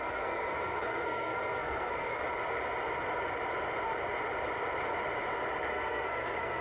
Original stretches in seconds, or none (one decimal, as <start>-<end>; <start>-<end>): 2.2-5.7